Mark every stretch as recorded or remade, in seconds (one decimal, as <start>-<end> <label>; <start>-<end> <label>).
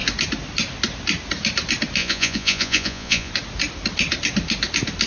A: 0.0-2.0 recorded; 2.0-3.3 remade; 3.3-5.1 recorded